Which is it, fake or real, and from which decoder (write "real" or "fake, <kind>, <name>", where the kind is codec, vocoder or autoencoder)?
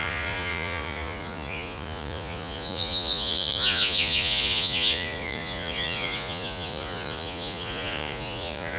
fake, vocoder, Vocos